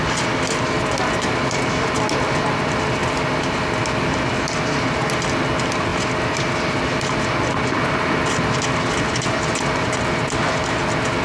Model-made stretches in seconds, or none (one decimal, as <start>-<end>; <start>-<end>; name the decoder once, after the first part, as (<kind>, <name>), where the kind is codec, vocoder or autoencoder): none